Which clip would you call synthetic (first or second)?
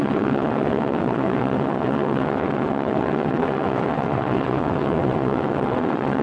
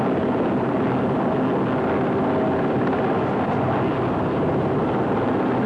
first